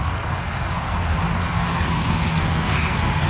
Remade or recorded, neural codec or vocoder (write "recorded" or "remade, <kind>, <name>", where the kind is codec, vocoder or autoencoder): remade, codec, SNAC